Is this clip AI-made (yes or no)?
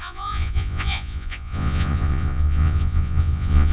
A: yes